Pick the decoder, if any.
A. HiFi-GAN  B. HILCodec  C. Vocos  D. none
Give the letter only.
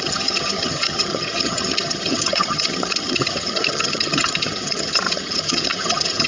A